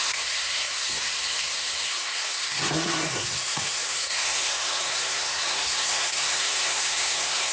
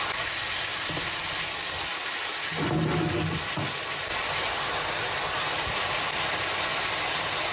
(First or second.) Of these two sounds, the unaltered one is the second